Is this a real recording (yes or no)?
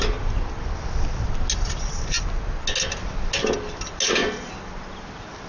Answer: yes